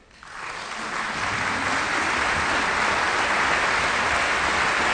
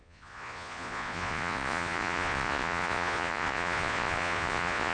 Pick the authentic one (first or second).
first